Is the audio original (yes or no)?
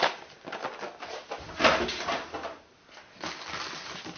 yes